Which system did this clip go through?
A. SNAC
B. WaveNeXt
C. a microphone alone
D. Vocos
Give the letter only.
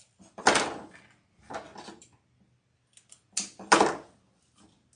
C